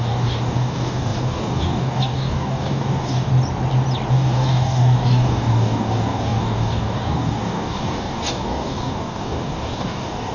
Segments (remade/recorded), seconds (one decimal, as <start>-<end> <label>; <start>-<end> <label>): 0.0-3.3 remade; 3.3-4.1 recorded; 4.1-10.3 remade